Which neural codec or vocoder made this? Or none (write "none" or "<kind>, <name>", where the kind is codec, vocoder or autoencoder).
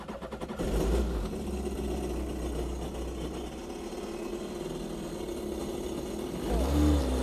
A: none